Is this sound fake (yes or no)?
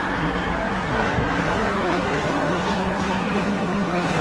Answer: yes